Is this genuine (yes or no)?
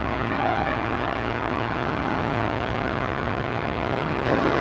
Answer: no